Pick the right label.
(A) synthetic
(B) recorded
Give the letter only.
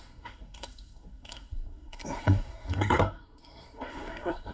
A